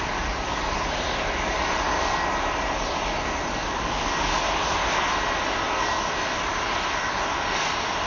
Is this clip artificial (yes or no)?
no